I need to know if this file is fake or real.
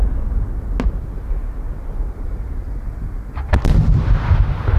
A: real